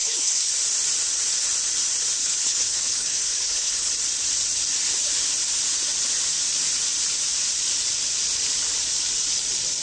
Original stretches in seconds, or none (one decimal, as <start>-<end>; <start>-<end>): 0.5-2.2; 3.9-9.8